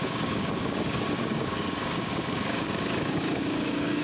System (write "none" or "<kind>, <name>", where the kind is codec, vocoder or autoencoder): codec, DAC